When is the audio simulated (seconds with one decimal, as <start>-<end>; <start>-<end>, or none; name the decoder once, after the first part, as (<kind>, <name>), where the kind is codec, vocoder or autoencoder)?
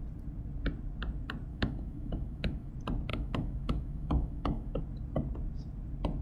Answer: 1.5-2.7 (autoencoder, DAC-VAE); 3.1-4.8